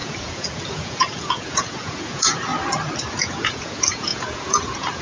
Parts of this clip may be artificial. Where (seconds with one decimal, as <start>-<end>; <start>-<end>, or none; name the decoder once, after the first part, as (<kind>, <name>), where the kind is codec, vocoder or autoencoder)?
0.0-2.5 (vocoder, Vocos); 3.1-5.0

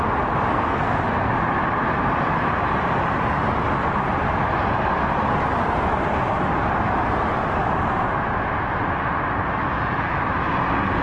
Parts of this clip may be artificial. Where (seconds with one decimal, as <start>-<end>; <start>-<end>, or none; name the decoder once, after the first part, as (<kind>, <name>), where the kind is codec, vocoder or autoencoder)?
0.5-1.3 (codec, SNAC)

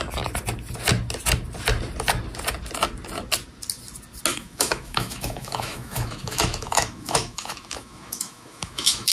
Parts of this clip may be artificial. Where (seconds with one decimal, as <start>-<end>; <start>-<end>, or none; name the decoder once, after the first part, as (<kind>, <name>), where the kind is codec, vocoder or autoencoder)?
4.3-9.1 (autoencoder, DAC-VAE)

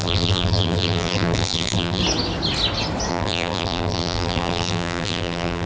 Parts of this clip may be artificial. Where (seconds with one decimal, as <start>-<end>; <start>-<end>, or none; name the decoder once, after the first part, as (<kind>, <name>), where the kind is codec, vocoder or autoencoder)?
0.0-2.0 (vocoder, BigVGAN v2); 3.1-5.7

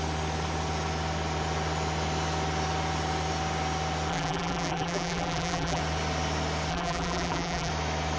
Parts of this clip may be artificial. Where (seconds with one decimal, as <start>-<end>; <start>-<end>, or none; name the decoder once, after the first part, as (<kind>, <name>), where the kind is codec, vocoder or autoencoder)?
4.1-5.8 (vocoder, BigVGAN v2); 6.7-7.7

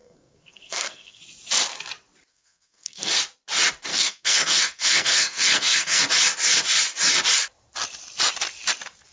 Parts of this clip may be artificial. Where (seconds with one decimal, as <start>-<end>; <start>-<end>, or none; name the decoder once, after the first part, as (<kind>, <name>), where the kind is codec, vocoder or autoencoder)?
0.0-1.2 (codec, SNAC); 2.3-3.1; 3.9-6.0